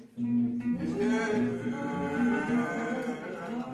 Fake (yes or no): no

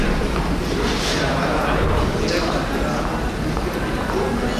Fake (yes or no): no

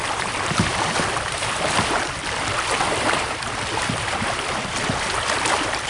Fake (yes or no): yes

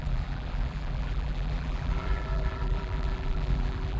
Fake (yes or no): yes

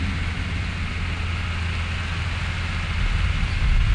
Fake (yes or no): no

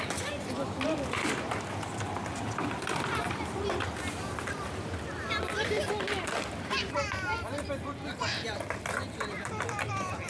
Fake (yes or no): yes